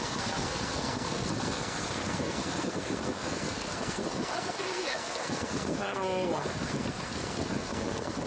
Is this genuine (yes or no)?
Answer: no